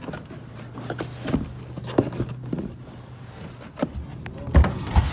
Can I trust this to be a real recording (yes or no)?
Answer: yes